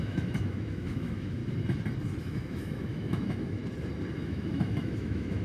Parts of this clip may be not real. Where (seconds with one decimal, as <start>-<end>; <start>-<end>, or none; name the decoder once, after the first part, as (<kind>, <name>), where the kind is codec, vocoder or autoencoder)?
0.0-1.4 (autoencoder, DAC-VAE); 2.2-3.6; 4.1-5.4